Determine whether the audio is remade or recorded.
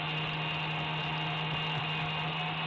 recorded